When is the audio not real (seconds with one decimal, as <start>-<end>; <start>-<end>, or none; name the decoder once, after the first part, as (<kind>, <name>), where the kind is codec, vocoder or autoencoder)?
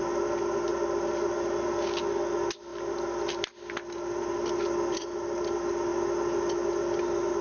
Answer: 0.7-1.7 (vocoder, BigVGAN v2); 2.7-5.4